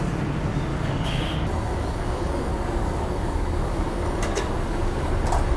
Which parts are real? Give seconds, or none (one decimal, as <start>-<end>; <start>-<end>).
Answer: 0.0-0.7; 1.2-1.7; 5.1-5.6